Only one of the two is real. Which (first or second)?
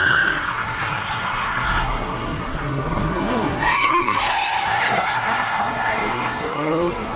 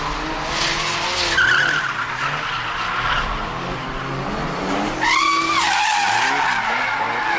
second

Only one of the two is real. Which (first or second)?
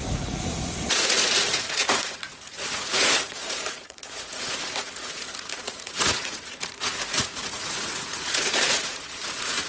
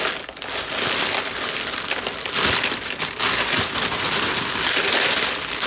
second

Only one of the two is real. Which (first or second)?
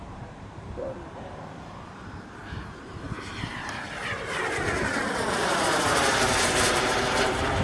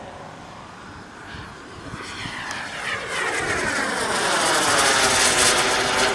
second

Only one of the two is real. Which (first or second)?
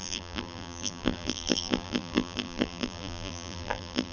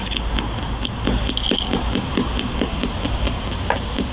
second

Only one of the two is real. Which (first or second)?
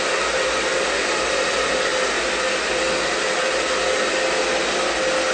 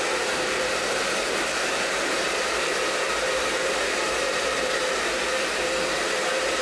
first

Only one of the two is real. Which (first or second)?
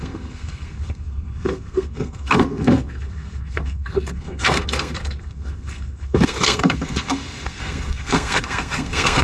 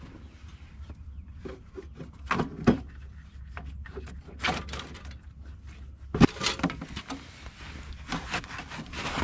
second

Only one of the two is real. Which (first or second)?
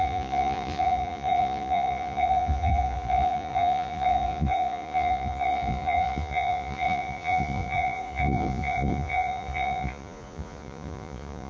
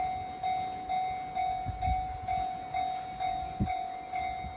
second